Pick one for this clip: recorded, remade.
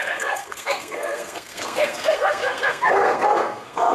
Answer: remade